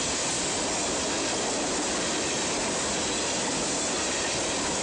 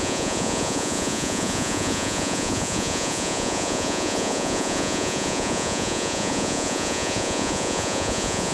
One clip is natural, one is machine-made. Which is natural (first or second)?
first